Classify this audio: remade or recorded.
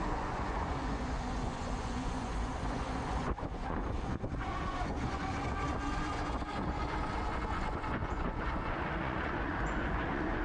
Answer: remade